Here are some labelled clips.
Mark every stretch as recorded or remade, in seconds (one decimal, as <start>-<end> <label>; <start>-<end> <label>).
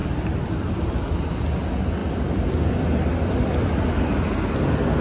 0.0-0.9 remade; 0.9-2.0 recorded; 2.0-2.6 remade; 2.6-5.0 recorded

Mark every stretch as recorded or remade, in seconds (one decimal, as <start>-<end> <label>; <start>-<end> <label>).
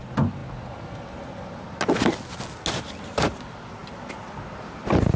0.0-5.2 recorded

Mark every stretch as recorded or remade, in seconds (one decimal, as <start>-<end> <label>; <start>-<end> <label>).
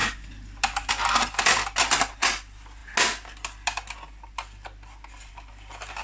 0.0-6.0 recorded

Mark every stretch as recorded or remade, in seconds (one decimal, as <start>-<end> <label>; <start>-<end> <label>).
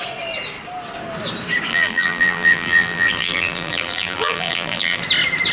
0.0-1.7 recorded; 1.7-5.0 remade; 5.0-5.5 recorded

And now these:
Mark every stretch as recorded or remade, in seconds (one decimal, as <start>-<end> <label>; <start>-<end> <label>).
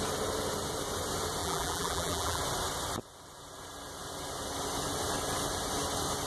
0.0-1.4 recorded; 1.4-2.4 remade; 2.4-6.3 recorded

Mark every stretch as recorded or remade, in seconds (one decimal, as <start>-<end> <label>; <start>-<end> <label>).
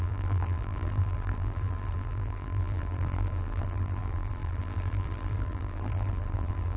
0.0-6.8 remade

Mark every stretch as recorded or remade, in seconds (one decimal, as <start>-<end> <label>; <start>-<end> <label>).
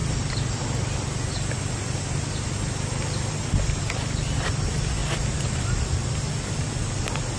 0.0-3.8 recorded; 3.8-7.4 remade